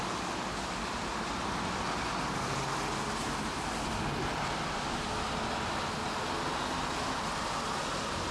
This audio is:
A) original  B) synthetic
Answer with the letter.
A